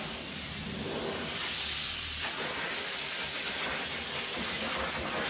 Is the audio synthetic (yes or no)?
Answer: no